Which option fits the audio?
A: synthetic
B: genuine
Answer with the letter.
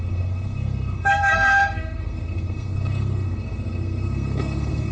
A